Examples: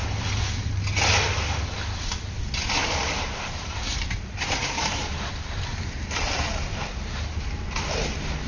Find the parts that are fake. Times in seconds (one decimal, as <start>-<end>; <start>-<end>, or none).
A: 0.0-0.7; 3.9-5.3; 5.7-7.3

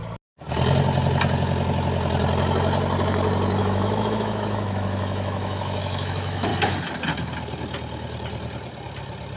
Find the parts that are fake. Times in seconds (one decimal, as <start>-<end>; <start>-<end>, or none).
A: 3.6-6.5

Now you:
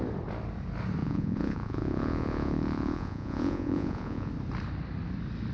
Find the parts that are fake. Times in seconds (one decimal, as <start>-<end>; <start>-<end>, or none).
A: 1.0-4.3

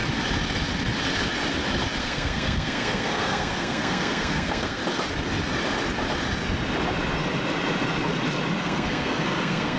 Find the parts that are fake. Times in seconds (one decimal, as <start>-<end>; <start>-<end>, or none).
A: 2.0-4.8; 8.6-9.8

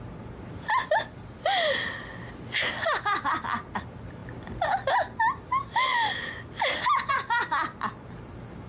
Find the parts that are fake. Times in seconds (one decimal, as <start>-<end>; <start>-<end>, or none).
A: none